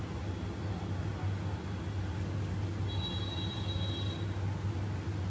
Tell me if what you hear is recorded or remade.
recorded